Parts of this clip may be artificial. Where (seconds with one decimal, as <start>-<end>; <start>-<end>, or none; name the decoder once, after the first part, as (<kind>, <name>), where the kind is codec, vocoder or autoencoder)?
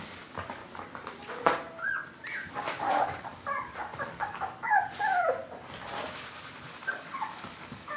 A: 0.0-0.6 (codec, DAC); 2.5-5.4; 6.1-8.0